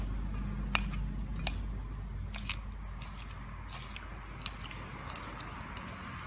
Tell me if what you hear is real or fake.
real